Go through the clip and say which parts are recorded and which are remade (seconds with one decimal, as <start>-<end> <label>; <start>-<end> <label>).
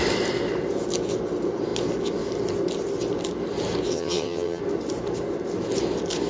0.0-3.9 recorded; 3.9-4.6 remade; 4.6-6.3 recorded